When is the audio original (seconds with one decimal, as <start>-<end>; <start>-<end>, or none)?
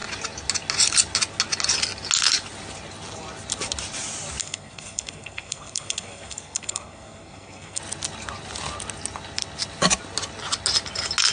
0.0-4.4; 7.8-11.3